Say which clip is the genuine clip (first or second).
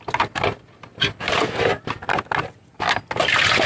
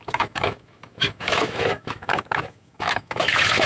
first